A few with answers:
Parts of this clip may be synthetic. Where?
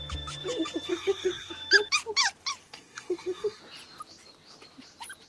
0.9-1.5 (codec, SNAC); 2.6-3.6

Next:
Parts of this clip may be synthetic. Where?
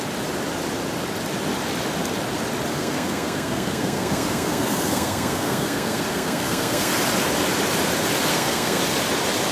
2.7-6.9 (codec, SNAC); 8.3-8.8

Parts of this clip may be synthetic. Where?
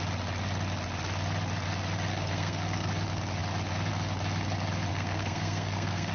2.1-2.9 (codec, SNAC); 4.9-6.1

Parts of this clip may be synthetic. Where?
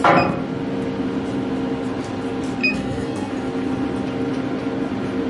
2.6-3.3 (codec, SNAC)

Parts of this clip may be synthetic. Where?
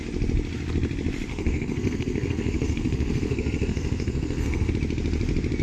1.3-4.7 (codec, SNAC)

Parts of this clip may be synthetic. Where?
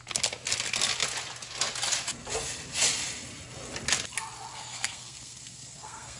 4.5-6.2 (codec, SNAC)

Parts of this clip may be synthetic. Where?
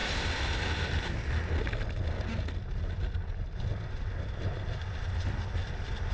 none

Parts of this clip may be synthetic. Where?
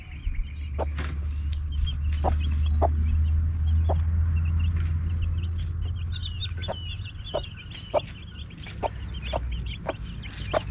none